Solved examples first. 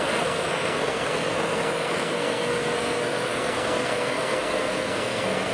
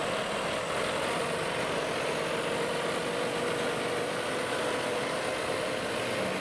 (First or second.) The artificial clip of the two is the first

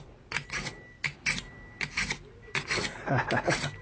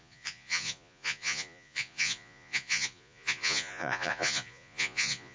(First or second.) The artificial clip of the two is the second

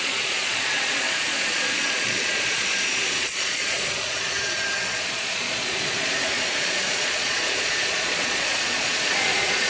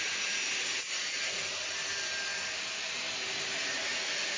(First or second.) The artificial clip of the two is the first